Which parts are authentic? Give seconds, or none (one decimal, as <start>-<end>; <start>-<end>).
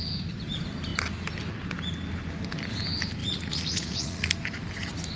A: 0.0-3.2; 4.3-5.2